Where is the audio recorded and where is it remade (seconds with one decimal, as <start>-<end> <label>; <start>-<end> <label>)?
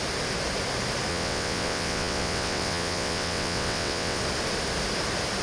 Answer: 0.0-1.1 recorded; 1.1-4.2 remade; 4.2-5.4 recorded